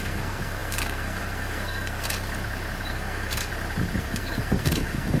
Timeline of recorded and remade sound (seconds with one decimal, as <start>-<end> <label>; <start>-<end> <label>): 0.0-2.3 remade; 2.3-2.9 recorded; 2.9-3.5 remade; 3.5-4.0 recorded; 4.0-5.2 remade